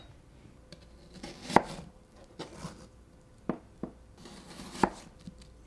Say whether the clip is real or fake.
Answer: fake